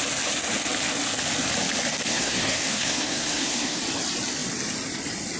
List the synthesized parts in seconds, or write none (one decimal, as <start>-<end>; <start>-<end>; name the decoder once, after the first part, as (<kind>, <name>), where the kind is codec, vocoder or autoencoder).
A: 2.1-3.8 (codec, SNAC)